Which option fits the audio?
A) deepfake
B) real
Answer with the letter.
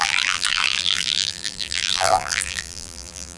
A